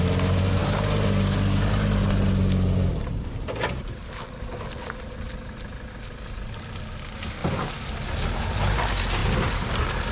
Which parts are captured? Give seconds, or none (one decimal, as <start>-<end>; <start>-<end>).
0.0-10.1